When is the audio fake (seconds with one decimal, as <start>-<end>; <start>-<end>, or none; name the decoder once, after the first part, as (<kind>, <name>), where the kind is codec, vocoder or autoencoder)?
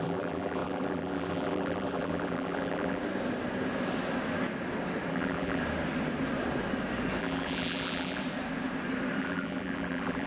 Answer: 0.0-3.0 (vocoder, BigVGAN v2); 5.1-5.6; 7.2-8.2; 9.2-10.3